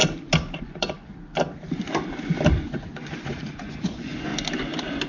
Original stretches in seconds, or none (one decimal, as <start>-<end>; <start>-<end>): 0.0-0.6; 1.1-2.6; 4.3-5.1